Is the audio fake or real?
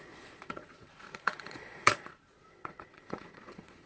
fake